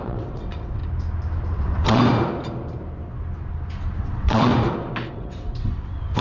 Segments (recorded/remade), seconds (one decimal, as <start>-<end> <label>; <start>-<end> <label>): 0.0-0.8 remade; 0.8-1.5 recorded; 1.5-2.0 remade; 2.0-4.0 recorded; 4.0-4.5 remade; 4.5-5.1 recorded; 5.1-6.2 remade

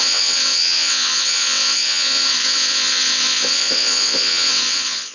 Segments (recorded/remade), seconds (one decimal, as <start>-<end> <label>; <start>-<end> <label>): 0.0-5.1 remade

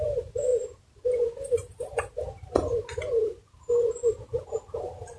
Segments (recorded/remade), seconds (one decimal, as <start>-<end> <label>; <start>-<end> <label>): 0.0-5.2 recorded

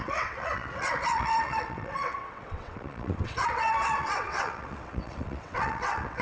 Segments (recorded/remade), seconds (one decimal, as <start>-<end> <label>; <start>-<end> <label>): 0.0-6.2 remade

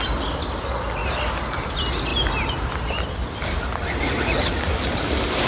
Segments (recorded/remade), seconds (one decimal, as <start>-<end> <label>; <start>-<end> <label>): 0.0-5.5 recorded

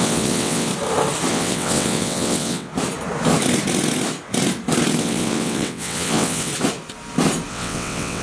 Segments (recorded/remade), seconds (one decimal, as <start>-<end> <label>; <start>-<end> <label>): 0.0-0.7 remade; 0.7-1.3 recorded; 1.3-2.7 remade; 2.7-5.0 recorded; 5.0-6.5 remade; 6.5-7.5 recorded; 7.5-8.2 remade

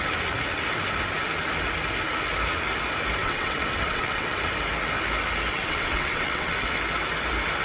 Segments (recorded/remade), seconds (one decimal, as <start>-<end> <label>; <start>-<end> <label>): 0.0-3.2 recorded; 3.2-4.4 remade; 4.4-5.5 recorded; 5.5-6.5 remade; 6.5-7.6 recorded